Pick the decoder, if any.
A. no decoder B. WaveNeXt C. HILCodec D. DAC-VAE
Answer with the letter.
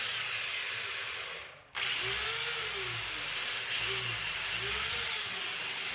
A